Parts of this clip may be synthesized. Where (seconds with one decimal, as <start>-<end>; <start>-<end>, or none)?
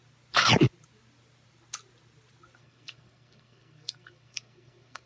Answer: 2.6-5.1